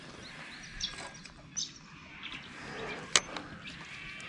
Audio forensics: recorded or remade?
recorded